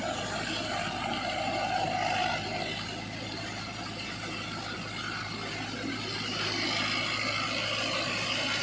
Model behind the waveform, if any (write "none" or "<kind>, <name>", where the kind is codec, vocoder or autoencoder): none